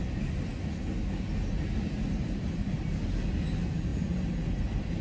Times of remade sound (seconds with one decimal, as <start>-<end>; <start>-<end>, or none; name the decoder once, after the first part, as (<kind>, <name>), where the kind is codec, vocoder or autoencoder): none